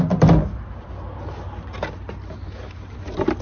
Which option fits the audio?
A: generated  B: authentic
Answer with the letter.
B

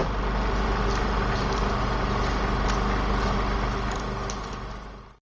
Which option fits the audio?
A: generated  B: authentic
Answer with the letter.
B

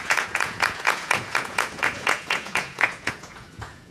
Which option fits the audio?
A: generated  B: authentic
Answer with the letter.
A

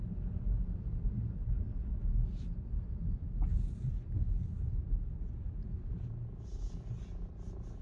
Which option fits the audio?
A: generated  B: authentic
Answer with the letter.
B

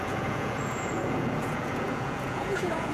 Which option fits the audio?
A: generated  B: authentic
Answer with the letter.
A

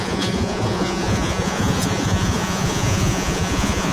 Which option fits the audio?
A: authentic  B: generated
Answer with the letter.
B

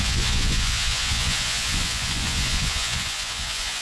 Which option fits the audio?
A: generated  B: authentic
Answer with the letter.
A